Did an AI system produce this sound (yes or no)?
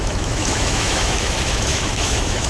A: yes